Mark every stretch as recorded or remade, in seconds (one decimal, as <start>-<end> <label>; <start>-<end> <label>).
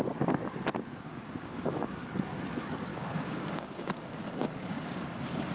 0.0-1.1 recorded; 1.1-2.4 remade; 2.4-2.9 recorded; 2.9-5.5 remade